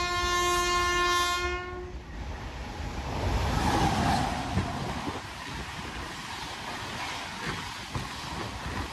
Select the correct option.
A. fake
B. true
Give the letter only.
B